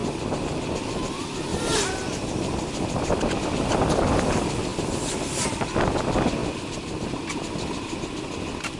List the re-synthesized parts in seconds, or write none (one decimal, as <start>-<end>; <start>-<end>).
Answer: 1.5-4.1; 4.7-5.8; 6.4-8.0